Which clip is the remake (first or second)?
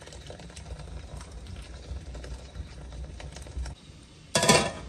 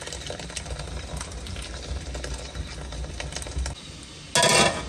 first